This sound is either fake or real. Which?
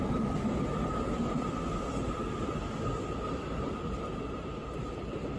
real